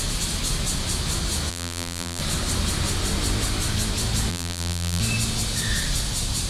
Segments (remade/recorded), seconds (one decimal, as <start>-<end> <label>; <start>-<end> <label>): 0.0-1.5 recorded; 1.5-2.2 remade; 2.2-4.3 recorded; 4.3-5.0 remade; 5.0-6.5 recorded

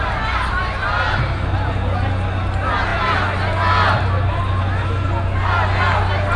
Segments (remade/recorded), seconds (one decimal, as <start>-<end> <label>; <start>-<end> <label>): 0.0-6.4 recorded

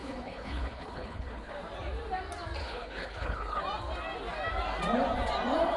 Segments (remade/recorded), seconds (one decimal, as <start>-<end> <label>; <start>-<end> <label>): 0.0-1.5 remade; 1.5-2.6 recorded; 2.6-3.6 remade; 3.6-5.8 recorded

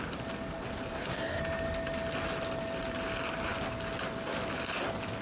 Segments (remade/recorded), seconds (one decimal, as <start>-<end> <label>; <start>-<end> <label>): 0.0-0.9 recorded; 0.9-1.4 remade; 1.4-5.2 recorded

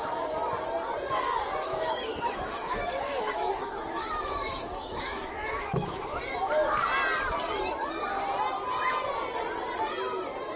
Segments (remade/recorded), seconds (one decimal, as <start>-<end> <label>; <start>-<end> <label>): 0.0-1.6 recorded; 1.6-6.2 remade; 6.2-10.6 recorded